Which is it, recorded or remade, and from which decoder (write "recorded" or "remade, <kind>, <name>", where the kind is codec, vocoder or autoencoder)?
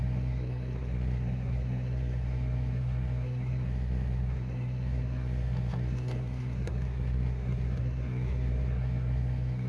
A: remade, codec, SNAC